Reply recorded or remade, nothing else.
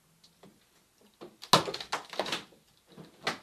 recorded